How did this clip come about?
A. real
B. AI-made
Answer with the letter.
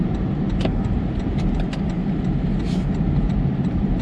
B